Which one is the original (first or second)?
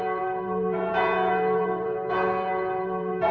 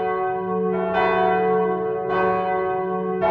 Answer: second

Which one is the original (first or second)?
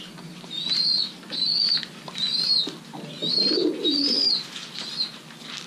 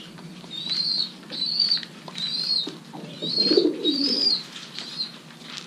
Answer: first